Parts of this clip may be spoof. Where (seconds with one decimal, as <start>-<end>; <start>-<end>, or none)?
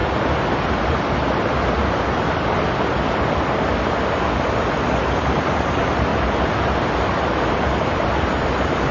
4.7-8.9